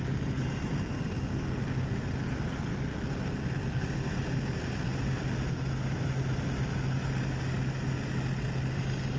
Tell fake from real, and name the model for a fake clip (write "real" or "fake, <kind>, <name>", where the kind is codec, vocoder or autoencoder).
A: real